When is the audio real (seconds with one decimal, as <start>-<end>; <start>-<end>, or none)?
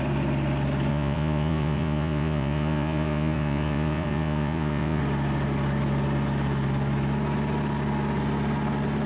0.0-0.9; 5.0-9.1